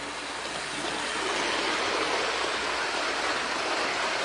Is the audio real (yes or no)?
yes